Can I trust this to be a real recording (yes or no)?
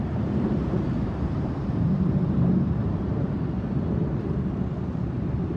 no